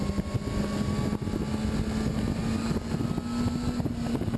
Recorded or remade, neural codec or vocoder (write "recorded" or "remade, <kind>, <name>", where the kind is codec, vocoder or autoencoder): recorded